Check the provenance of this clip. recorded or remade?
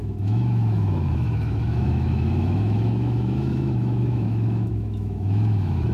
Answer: remade